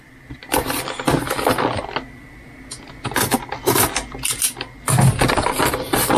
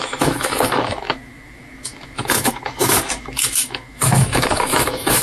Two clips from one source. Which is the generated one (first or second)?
second